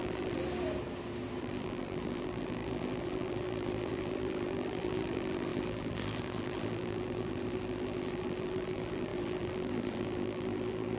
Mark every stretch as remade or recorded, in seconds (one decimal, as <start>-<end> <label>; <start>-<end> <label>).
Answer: 0.0-0.4 remade; 0.4-1.4 recorded; 1.4-11.0 remade